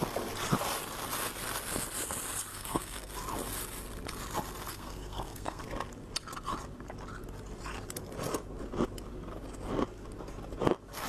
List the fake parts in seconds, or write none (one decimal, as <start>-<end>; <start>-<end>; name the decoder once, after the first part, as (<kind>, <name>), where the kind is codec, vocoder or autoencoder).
2.5-3.2 (codec, SNAC); 4.7-5.6